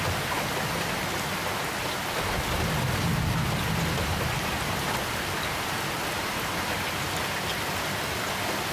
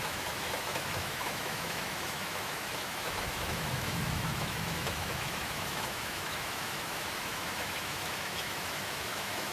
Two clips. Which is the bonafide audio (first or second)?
first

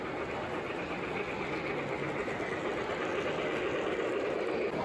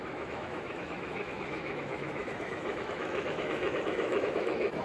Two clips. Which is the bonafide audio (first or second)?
first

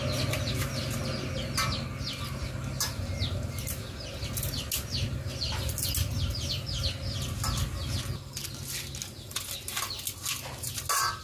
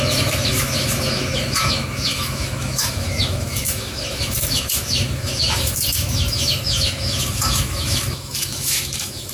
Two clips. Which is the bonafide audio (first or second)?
first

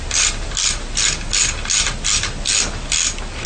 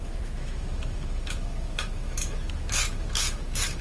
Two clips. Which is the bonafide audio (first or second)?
first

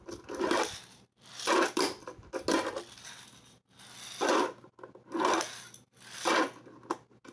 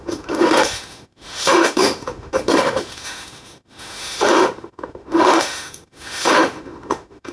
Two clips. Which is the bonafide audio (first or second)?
first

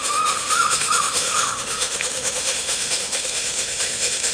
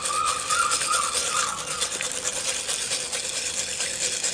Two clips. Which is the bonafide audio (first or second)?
second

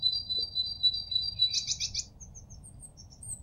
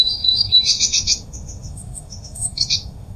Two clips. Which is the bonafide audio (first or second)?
first